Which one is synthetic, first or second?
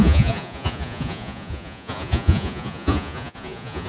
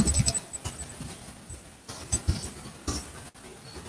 first